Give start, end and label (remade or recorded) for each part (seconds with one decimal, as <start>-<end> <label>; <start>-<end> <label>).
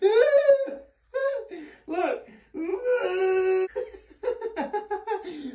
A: 0.0-5.5 recorded